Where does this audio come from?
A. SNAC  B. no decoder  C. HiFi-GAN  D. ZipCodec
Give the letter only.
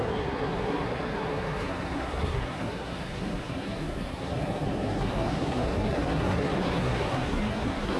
A